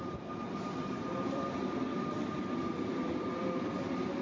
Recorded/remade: remade